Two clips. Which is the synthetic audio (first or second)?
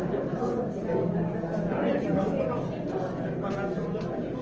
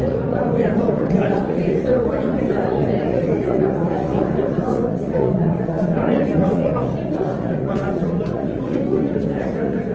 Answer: second